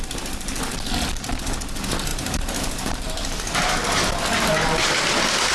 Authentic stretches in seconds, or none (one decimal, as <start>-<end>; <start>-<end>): 0.0-2.1; 4.0-5.5